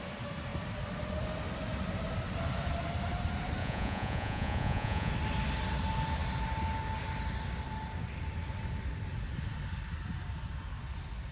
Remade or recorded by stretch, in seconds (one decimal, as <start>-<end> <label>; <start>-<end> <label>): 0.0-3.6 recorded; 3.6-5.1 remade; 5.1-11.3 recorded